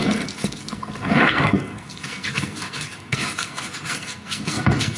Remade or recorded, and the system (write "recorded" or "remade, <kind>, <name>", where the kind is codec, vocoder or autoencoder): remade, codec, SNAC